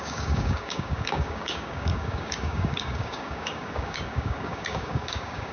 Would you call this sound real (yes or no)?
no